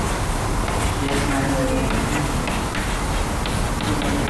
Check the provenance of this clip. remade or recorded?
recorded